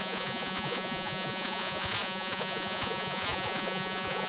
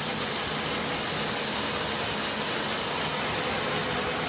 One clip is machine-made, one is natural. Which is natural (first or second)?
second